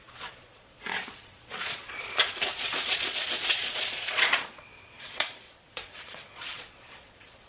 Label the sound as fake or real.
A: fake